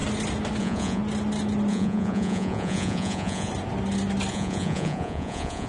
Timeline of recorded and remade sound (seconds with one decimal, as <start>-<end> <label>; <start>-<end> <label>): 0.0-0.6 recorded; 0.6-1.0 remade; 1.0-1.7 recorded; 1.7-3.5 remade; 3.5-4.3 recorded; 4.3-5.7 remade

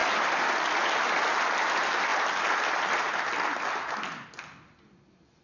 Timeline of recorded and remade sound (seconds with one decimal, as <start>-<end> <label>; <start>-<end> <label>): 0.0-5.4 recorded

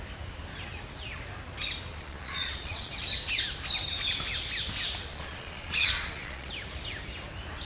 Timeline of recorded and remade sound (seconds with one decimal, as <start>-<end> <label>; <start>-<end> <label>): 0.0-1.9 recorded; 1.9-2.9 remade; 2.9-5.1 recorded; 5.1-6.5 remade; 6.5-7.6 recorded